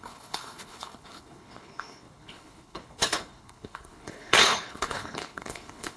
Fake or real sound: fake